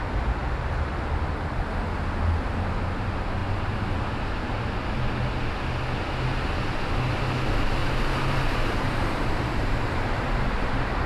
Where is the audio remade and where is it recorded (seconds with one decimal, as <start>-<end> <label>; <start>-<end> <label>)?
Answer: 0.0-0.4 recorded; 0.4-0.9 remade; 0.9-7.8 recorded; 7.8-10.3 remade; 10.3-11.1 recorded